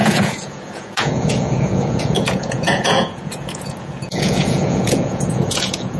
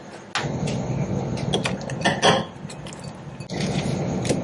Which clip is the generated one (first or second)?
first